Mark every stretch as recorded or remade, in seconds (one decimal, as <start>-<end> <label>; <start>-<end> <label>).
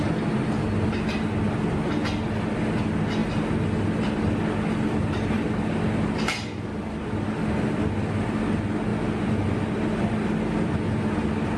0.0-11.6 recorded